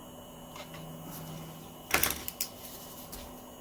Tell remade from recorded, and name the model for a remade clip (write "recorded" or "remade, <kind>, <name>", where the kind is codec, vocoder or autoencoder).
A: recorded